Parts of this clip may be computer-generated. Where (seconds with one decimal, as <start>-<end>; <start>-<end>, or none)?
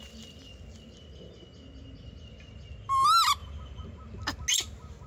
none